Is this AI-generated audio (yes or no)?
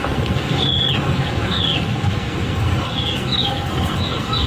yes